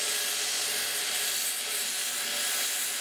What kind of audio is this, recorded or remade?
recorded